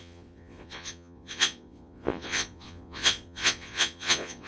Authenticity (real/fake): fake